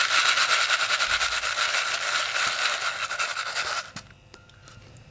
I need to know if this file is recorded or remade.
recorded